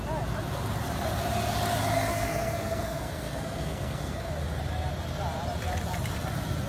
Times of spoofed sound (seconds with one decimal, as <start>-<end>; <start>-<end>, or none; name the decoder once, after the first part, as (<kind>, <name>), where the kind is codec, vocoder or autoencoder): 2.1-4.3 (codec, SNAC)